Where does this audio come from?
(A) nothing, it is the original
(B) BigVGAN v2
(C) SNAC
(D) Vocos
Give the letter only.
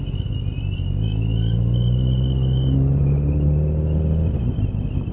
A